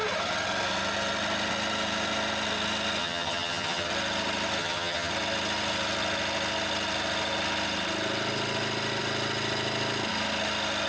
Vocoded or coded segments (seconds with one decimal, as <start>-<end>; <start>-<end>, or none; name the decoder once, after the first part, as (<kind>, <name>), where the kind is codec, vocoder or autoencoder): 3.0-3.9 (vocoder, HiFi-GAN); 4.6-5.1